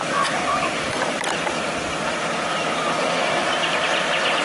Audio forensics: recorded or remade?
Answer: remade